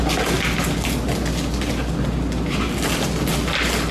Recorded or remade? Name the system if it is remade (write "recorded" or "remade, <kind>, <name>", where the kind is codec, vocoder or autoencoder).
recorded